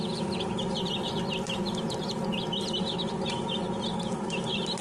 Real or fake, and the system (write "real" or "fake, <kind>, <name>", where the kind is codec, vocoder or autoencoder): real